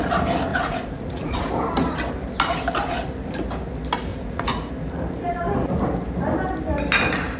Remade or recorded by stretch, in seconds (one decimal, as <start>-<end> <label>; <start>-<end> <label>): 0.0-0.5 recorded; 0.5-1.5 remade; 1.5-4.1 recorded; 4.1-4.7 remade; 4.7-7.4 recorded